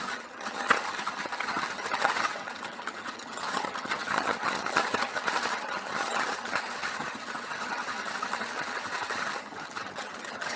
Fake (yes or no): yes